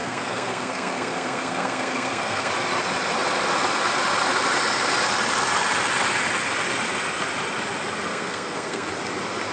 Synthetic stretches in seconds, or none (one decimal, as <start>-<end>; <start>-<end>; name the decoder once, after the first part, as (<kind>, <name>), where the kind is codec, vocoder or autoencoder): 0.0-2.5 (codec, SNAC); 8.1-8.9